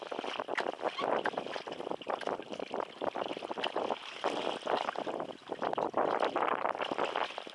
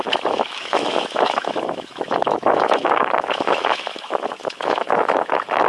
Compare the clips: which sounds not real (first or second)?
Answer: second